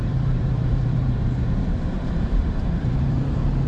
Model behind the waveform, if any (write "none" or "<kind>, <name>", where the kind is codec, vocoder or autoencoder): vocoder, BigVGAN v2